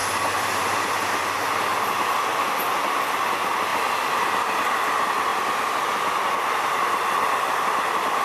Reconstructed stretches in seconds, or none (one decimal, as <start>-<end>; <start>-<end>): none

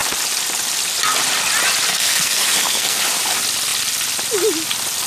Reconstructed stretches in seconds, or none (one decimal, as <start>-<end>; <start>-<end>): 1.9-3.0